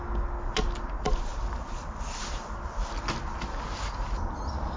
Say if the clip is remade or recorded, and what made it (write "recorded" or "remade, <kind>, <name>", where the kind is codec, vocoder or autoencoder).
recorded